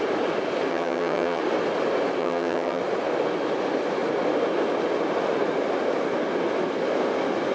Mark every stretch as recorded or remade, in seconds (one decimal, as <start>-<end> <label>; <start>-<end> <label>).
0.0-0.7 recorded; 0.7-1.4 remade; 1.4-2.2 recorded; 2.2-2.8 remade; 2.8-7.5 recorded